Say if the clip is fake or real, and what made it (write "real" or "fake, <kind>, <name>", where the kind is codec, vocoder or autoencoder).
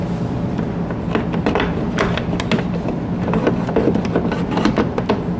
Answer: real